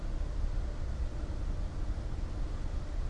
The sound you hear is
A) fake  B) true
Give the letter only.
B